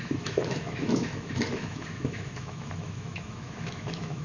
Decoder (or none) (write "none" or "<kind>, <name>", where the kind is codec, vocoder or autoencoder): autoencoder, DAC-VAE